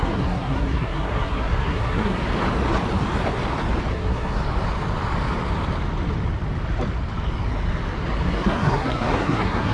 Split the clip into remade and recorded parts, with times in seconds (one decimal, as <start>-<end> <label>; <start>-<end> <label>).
0.0-2.2 remade; 2.2-3.9 recorded; 3.9-4.4 remade; 4.4-8.2 recorded; 8.2-9.7 remade